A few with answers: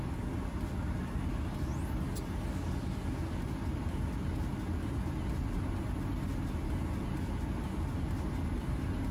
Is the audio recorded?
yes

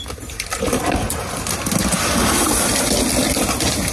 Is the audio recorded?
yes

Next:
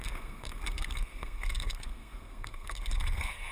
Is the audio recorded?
no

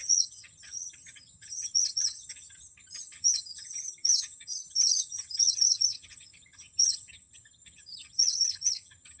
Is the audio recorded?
no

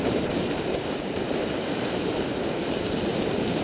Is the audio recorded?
no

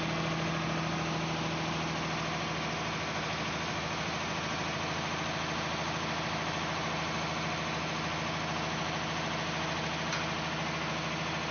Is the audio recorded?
yes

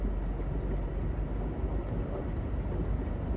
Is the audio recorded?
yes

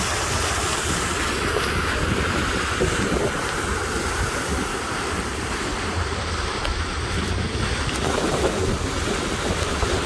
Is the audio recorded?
yes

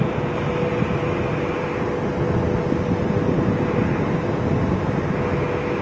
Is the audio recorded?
yes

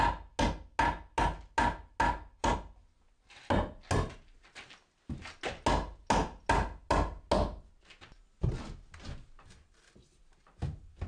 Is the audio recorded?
yes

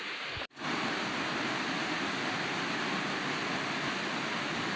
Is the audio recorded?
yes